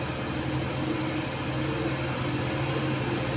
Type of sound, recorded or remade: recorded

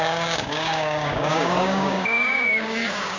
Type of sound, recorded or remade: remade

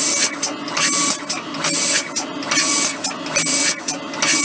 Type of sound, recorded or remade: recorded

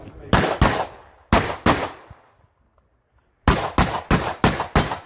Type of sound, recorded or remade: recorded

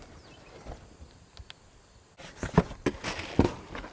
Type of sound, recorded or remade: recorded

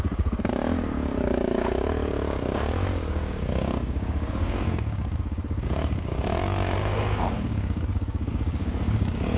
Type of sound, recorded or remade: remade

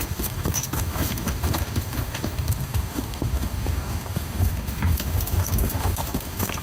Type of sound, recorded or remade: remade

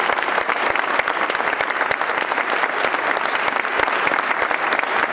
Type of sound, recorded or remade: recorded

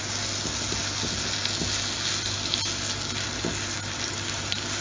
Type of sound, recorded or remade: recorded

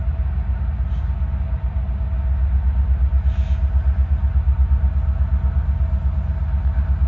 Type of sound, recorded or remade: recorded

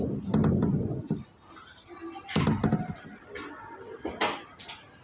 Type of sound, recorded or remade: recorded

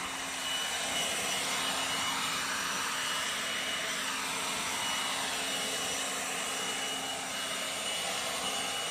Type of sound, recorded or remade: recorded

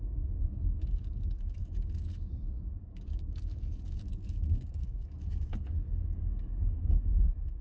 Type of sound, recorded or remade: remade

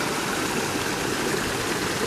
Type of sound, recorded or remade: recorded